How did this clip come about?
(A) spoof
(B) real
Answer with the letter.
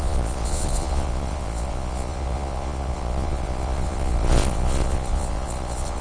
A